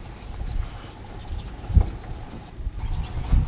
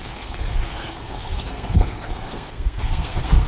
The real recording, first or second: first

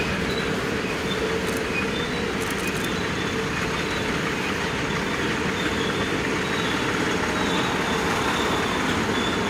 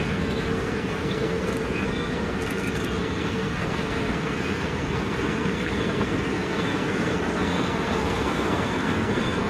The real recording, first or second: first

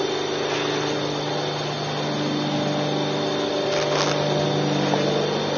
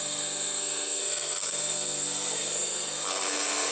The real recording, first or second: first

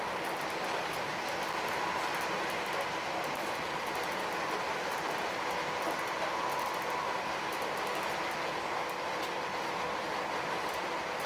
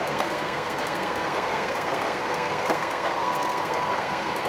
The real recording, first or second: first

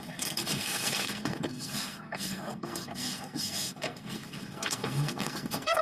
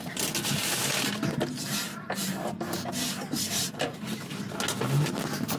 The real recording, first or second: second